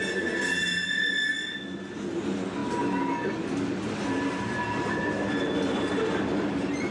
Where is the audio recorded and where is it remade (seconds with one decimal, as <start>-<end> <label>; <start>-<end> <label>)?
0.0-6.9 recorded